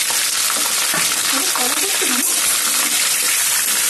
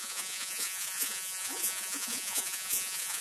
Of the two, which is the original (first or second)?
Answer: first